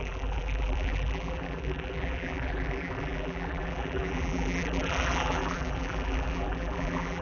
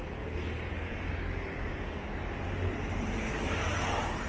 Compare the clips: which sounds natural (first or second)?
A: second